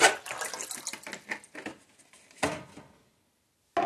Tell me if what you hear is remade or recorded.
recorded